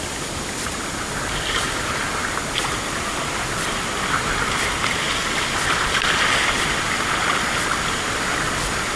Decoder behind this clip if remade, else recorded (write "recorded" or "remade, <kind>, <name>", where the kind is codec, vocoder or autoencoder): recorded